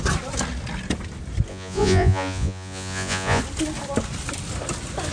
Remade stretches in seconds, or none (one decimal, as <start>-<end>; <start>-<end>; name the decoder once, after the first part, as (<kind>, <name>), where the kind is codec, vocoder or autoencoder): 1.5-3.4 (vocoder, Vocos)